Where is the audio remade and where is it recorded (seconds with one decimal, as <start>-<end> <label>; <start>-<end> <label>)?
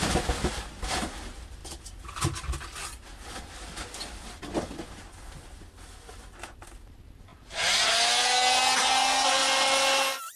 0.0-10.4 recorded